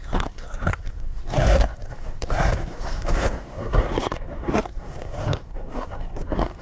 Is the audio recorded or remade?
remade